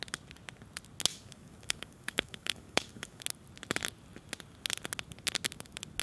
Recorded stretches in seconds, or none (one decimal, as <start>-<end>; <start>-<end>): 0.0-1.1; 3.2-6.0